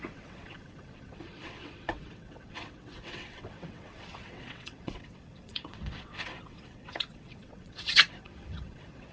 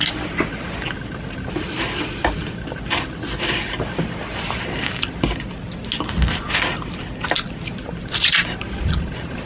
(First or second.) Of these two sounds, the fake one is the first